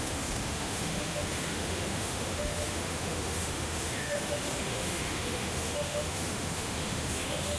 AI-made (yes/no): yes